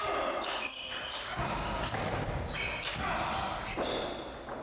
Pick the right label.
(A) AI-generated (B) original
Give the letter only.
B